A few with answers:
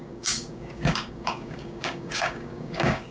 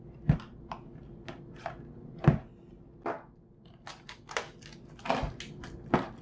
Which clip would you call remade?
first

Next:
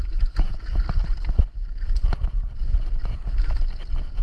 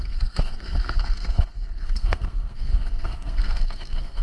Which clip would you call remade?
second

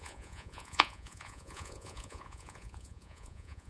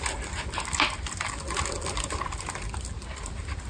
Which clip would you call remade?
first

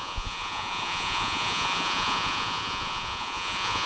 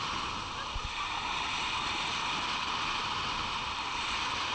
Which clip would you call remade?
first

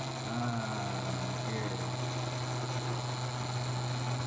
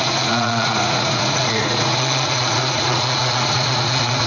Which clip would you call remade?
second